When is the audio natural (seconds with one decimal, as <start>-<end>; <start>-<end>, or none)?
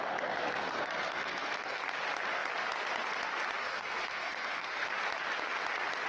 0.0-0.6; 1.8-3.6; 4.9-6.1